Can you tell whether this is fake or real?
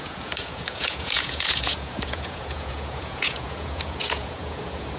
fake